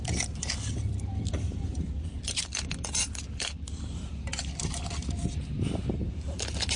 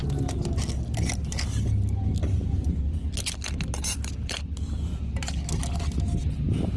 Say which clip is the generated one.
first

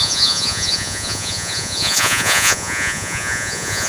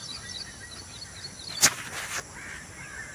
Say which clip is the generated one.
first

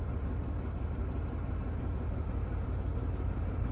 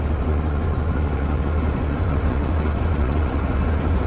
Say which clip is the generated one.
second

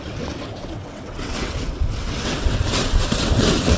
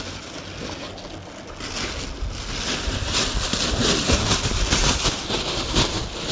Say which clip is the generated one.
first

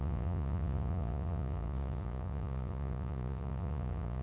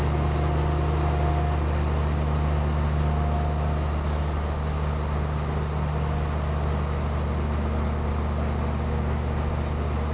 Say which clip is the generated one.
first